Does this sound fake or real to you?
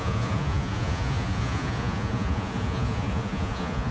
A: fake